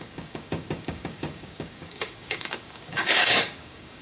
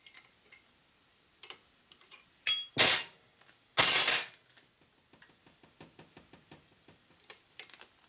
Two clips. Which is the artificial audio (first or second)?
first